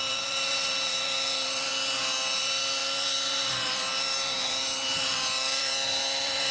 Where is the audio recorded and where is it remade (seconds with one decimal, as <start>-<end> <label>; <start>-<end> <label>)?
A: 0.0-1.7 remade; 1.7-2.4 recorded; 2.4-6.5 remade